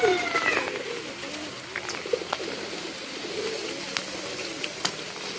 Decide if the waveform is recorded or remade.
recorded